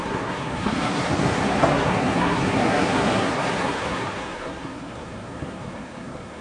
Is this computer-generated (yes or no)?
yes